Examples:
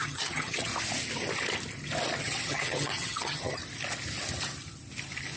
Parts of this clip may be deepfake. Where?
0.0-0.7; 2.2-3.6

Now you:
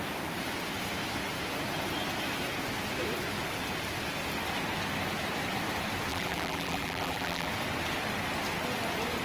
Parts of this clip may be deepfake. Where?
6.1-7.5

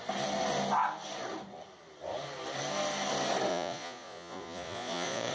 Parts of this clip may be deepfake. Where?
3.5-5.3